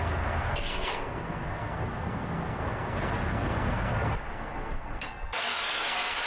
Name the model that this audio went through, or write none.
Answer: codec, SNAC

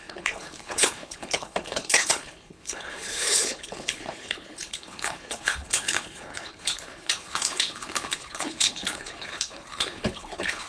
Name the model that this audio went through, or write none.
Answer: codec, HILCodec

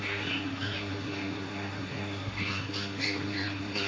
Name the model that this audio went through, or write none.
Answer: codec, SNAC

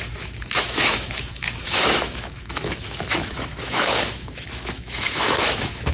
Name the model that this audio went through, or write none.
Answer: autoencoder, DAC-VAE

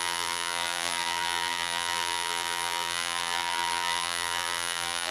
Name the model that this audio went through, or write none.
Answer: vocoder, BigVGAN v2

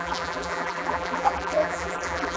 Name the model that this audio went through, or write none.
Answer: vocoder, BigVGAN v2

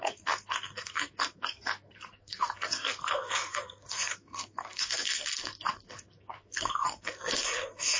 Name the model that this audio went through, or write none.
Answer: codec, SNAC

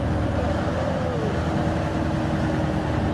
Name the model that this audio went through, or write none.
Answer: none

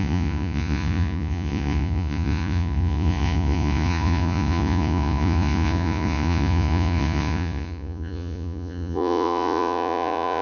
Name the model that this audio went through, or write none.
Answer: vocoder, Vocos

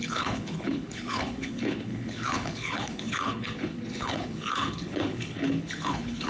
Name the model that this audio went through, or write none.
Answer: codec, HILCodec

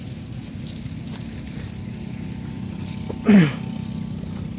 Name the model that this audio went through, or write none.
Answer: none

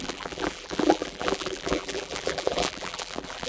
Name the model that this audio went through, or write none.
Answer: vocoder, BigVGAN v2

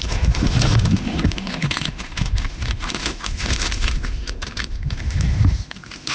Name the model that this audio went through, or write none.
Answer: autoencoder, DAC-VAE